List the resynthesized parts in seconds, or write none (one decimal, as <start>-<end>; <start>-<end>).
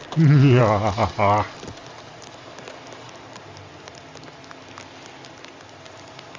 none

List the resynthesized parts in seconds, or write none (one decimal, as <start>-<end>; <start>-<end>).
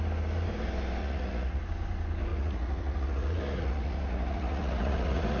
1.0-1.6; 2.3-5.4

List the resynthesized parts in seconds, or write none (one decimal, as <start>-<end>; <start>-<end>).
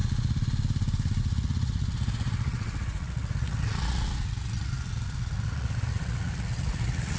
1.2-7.2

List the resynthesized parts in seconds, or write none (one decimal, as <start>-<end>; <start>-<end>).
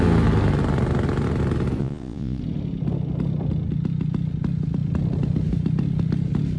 1.8-2.4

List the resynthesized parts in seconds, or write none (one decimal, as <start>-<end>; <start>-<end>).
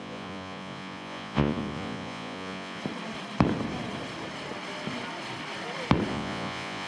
0.0-2.8; 6.1-6.9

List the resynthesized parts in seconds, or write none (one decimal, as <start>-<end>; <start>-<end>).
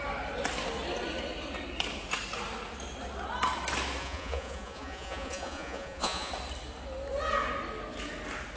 4.0-6.3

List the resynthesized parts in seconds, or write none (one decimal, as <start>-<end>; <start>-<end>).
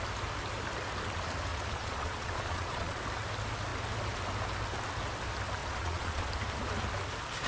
1.5-3.0; 5.6-6.3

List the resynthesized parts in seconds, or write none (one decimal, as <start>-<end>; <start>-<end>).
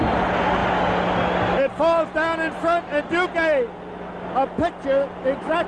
none